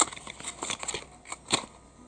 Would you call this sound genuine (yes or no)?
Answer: yes